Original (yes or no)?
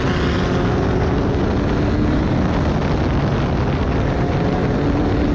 yes